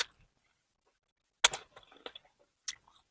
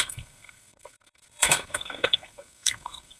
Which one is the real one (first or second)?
first